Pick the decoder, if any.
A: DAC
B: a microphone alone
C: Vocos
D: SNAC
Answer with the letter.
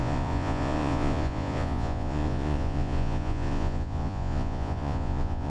C